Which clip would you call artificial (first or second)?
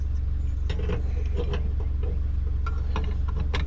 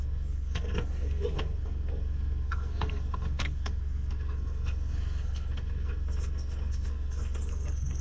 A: second